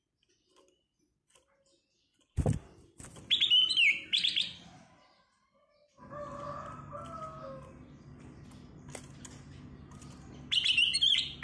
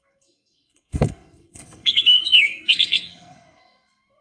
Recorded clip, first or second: first